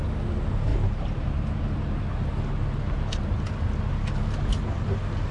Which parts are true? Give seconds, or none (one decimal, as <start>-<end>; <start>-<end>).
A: 0.0-5.3